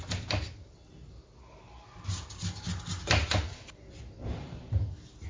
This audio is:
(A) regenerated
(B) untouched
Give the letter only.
B